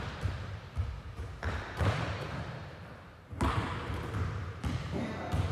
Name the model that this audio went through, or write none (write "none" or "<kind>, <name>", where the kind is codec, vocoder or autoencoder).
vocoder, BigVGAN v2